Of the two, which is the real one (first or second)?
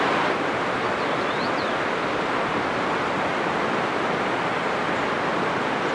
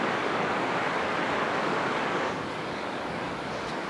first